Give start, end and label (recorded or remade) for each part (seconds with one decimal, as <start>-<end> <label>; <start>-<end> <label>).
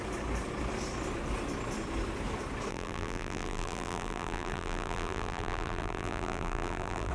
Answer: 0.0-2.7 recorded; 2.7-7.1 remade